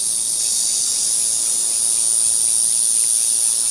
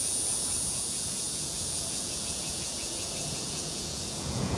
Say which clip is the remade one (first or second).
second